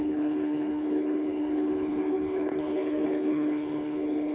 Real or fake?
fake